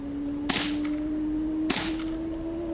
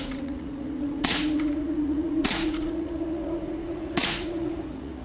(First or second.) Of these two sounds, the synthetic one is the second